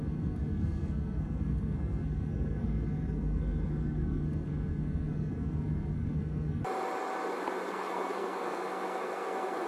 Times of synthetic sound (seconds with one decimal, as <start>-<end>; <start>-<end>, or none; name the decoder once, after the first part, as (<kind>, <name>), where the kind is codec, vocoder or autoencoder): 0.0-6.6 (codec, SNAC); 7.7-9.7